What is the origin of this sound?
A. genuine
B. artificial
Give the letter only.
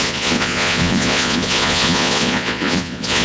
B